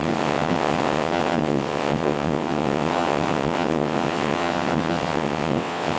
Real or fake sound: fake